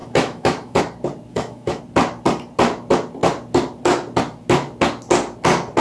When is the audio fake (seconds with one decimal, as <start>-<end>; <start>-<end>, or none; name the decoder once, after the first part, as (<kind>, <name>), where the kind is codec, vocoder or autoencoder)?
0.0-0.8 (autoencoder, DAC-VAE); 1.3-1.8